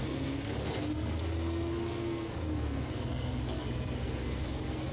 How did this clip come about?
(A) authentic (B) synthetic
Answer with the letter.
B